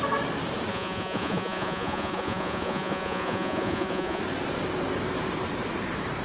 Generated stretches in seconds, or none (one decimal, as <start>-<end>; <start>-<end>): 0.7-4.2